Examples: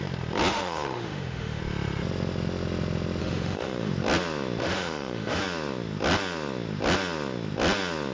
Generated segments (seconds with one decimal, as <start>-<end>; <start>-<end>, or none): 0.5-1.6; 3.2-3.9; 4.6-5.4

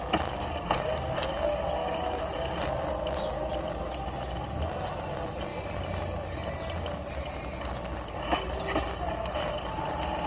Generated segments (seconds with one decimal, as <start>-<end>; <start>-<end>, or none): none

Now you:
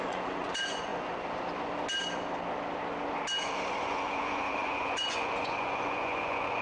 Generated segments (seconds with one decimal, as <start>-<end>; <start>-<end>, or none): 0.0-0.9; 3.8-6.6

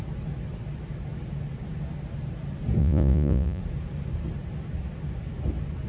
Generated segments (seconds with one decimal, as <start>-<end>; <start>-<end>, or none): 2.8-3.6